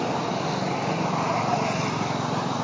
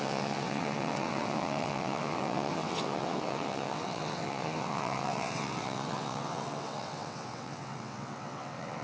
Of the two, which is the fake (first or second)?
second